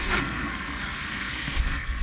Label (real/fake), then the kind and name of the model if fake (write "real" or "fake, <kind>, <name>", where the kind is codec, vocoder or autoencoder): fake, codec, SNAC